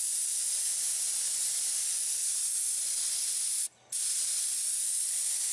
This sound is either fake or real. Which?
real